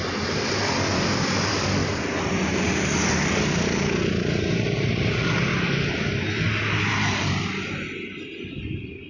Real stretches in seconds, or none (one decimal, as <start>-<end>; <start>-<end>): 0.0-9.1